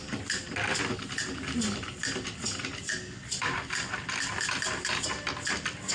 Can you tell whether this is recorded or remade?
recorded